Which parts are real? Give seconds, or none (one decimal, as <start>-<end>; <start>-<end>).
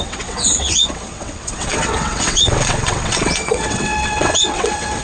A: none